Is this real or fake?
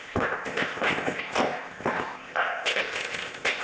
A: fake